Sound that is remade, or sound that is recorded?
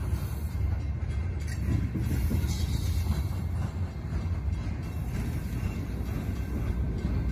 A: recorded